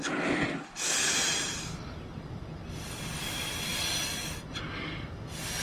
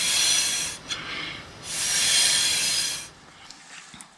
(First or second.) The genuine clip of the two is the first